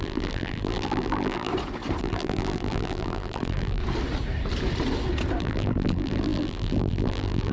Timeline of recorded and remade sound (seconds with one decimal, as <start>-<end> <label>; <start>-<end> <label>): 0.0-1.5 remade; 1.5-2.0 recorded; 2.0-3.8 remade; 3.8-5.4 recorded; 5.4-7.5 remade